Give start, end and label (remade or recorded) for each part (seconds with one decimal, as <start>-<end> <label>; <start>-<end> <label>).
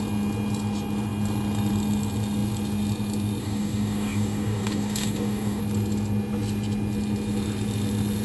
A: 0.0-3.4 recorded; 3.4-5.6 remade; 5.6-8.2 recorded